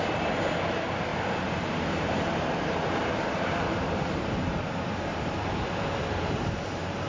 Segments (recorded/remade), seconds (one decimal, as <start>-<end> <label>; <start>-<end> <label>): 0.0-1.1 recorded; 1.1-4.6 remade; 4.6-5.1 recorded; 5.1-7.1 remade

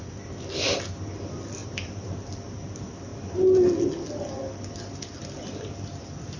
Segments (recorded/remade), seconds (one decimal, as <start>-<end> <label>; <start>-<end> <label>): 0.0-1.6 recorded; 1.6-2.3 remade; 2.3-6.4 recorded